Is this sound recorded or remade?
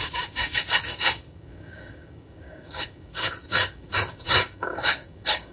remade